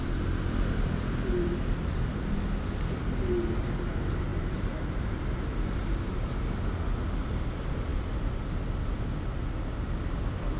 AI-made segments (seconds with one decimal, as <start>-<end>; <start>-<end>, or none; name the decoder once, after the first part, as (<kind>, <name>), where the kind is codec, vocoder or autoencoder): 4.3-6.3 (vocoder, BigVGAN v2); 7.9-8.4